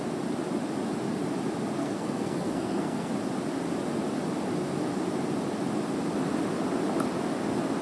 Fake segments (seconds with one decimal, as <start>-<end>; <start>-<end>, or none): 1.8-3.1